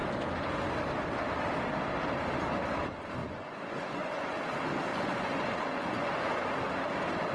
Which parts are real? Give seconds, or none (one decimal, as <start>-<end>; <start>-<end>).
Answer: 0.0-3.2; 4.4-4.9; 6.5-7.3